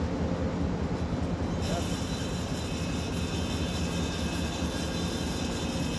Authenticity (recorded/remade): recorded